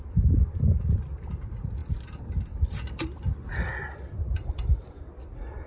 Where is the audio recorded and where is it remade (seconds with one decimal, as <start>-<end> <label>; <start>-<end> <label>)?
0.0-5.7 recorded